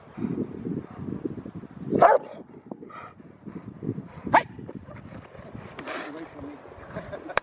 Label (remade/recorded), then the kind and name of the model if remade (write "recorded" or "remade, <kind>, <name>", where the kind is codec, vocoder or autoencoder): remade, vocoder, BigVGAN v2